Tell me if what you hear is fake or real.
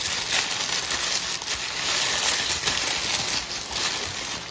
real